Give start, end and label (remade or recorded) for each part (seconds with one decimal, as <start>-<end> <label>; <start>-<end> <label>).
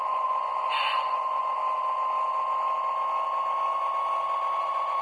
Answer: 0.0-1.6 remade; 1.6-4.6 recorded; 4.6-5.0 remade